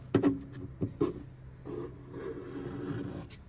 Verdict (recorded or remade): recorded